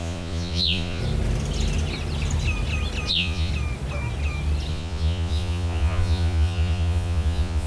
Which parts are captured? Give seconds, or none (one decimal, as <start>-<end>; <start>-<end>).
1.0-3.1; 3.5-4.7